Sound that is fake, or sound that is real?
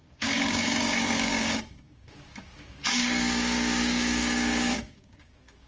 fake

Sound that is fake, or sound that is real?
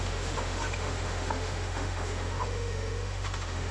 fake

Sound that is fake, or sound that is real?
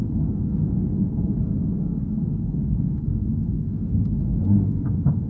fake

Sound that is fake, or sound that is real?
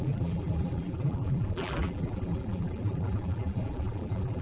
fake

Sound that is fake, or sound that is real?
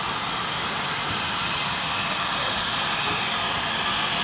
real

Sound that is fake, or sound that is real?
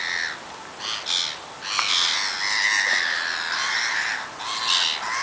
real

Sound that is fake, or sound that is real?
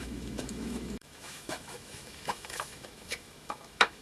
fake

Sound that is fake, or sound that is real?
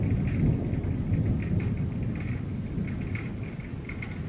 real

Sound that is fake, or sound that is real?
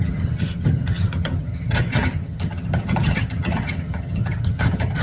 fake